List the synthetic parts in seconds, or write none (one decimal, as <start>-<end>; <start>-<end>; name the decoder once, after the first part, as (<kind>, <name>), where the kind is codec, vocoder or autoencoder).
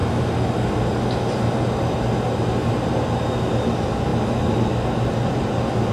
none